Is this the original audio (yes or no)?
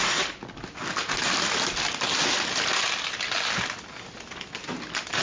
yes